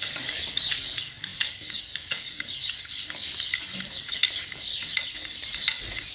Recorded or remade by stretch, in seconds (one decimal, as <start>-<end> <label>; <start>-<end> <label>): 0.0-4.7 remade; 4.7-6.1 recorded